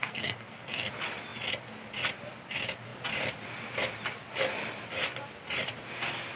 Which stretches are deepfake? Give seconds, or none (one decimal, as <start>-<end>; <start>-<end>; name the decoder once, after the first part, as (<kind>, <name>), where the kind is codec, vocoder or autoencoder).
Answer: 0.0-0.9 (codec, SNAC)